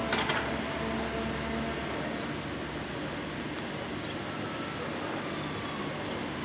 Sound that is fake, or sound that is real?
real